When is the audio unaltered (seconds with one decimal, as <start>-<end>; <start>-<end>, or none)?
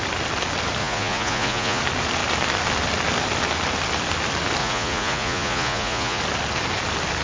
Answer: 0.0-0.8; 1.8-4.6; 6.2-7.2